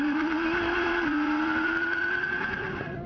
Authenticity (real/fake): fake